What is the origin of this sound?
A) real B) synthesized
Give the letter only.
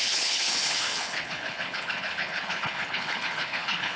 B